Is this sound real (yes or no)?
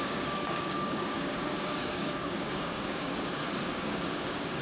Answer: no